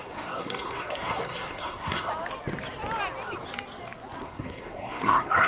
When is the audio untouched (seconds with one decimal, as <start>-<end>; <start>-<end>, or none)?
2.1-4.2